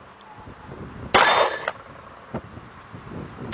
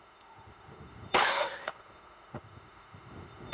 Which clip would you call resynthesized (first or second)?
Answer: second